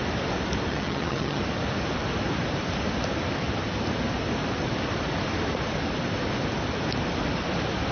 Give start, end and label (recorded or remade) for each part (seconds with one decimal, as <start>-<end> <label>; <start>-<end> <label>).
0.0-0.7 recorded; 0.7-1.4 remade; 1.4-7.9 recorded